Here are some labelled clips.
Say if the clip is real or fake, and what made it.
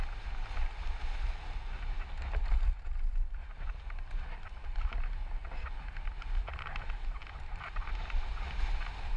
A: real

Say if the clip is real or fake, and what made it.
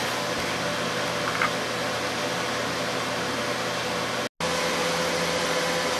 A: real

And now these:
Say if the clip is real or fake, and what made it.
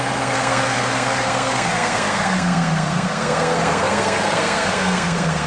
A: fake, codec, SNAC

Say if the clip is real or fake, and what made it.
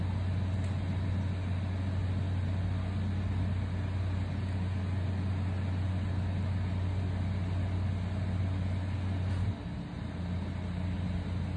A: real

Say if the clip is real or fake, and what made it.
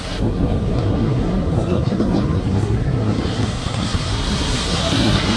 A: fake, codec, SNAC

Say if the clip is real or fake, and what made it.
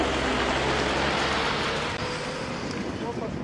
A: real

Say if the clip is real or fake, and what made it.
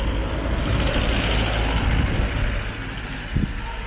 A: real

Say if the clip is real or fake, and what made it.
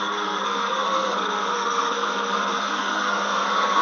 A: fake, codec, SNAC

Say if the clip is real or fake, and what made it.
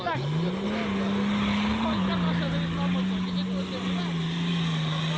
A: real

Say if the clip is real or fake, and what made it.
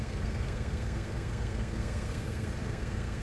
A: fake, codec, SNAC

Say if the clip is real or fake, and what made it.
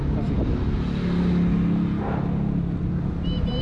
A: real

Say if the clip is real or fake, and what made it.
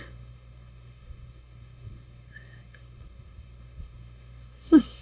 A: fake, codec, SNAC